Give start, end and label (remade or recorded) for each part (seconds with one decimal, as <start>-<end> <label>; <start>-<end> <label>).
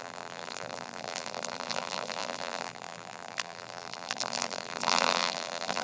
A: 0.0-5.8 remade